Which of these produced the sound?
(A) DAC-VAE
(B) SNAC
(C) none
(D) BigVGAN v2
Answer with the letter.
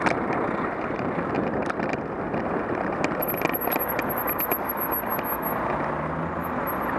C